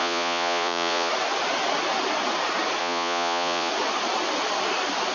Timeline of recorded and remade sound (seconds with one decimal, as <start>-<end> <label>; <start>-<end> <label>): 0.0-1.1 remade; 1.1-2.8 recorded; 2.8-3.7 remade; 3.7-5.1 recorded